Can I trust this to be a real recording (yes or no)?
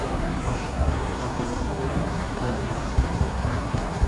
no